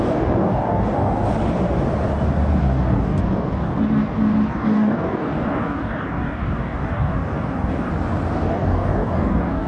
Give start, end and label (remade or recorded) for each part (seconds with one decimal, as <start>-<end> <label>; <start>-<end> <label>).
0.0-1.2 remade; 1.2-2.6 recorded; 2.6-3.7 remade; 3.7-4.5 recorded; 4.5-7.9 remade; 7.9-8.5 recorded; 8.5-9.7 remade